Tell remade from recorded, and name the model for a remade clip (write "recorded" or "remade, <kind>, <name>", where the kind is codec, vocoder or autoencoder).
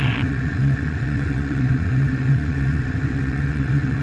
remade, vocoder, WaveNeXt